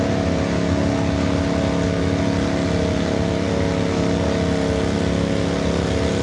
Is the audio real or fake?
real